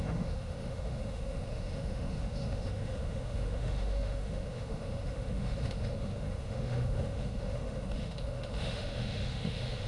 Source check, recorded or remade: remade